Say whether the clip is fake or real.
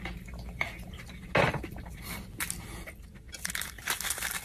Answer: real